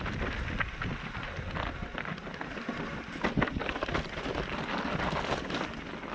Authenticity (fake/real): real